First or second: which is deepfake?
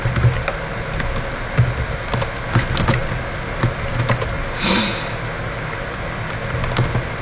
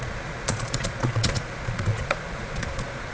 second